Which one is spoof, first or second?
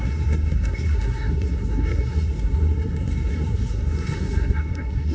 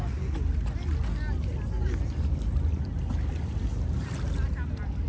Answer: first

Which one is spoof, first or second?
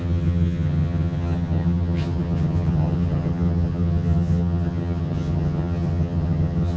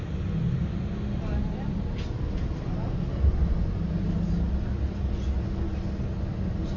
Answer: first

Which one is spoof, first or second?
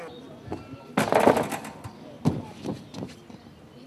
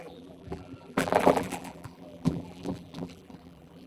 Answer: second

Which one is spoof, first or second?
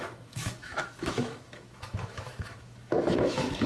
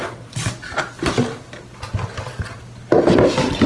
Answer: first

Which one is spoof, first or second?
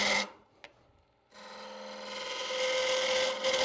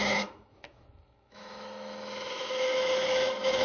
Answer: second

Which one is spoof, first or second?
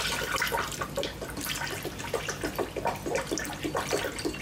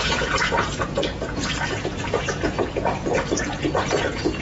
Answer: second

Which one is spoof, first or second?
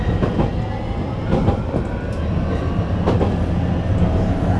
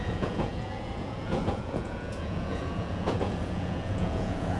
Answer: second